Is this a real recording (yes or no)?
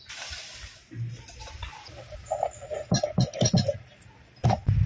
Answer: yes